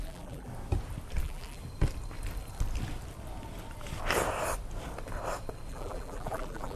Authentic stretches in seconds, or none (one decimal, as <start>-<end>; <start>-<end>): 0.5-1.2; 1.6-5.7